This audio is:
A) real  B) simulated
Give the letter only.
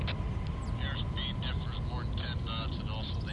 A